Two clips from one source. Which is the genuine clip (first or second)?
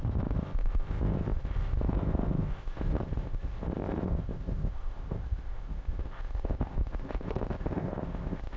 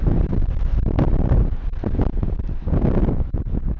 second